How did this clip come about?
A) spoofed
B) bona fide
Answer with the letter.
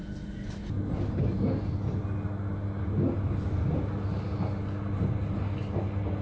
B